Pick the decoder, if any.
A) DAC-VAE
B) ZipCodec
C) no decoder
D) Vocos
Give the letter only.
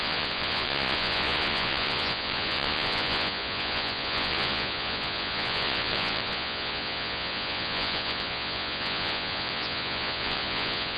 D